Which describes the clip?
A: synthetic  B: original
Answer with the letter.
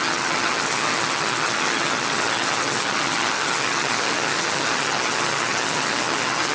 A